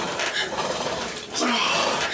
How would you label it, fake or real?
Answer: fake